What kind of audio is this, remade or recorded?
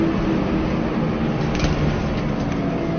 recorded